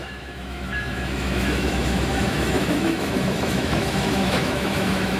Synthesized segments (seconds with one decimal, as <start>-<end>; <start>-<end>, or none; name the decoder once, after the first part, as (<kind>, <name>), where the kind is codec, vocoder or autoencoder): 0.0-5.2 (autoencoder, DAC-VAE)